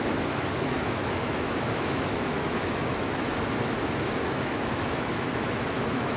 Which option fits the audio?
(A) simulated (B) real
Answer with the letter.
A